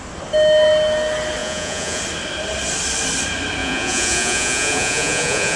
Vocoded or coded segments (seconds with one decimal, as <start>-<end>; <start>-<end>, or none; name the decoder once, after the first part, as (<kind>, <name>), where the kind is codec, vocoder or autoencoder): 1.4-2.0 (vocoder, Vocos); 3.6-5.6